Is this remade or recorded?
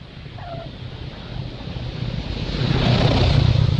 recorded